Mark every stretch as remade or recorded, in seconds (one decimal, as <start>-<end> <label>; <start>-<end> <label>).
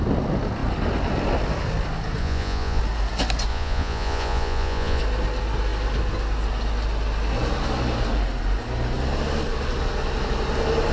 0.0-2.2 recorded; 2.2-2.8 remade; 2.8-3.5 recorded; 3.5-5.0 remade; 5.0-10.9 recorded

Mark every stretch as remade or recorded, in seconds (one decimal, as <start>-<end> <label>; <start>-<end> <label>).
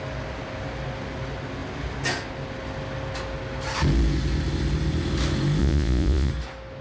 0.0-5.6 recorded; 5.6-6.3 remade; 6.3-6.8 recorded